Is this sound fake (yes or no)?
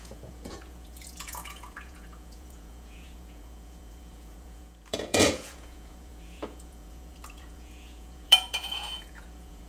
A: yes